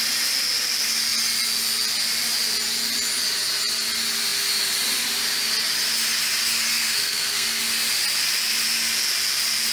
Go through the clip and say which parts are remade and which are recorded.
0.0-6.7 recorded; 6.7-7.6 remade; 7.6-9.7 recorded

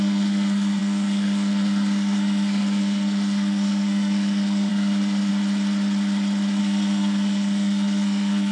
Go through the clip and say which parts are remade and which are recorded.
0.0-5.3 remade; 5.3-6.6 recorded; 6.6-8.5 remade

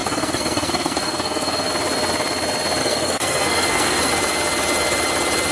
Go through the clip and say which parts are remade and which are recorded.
0.0-1.7 remade; 1.7-2.8 recorded; 2.8-4.1 remade; 4.1-5.5 recorded

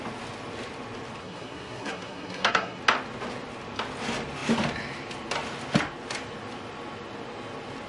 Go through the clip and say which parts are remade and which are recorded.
0.0-1.2 recorded; 1.2-2.8 remade; 2.8-7.9 recorded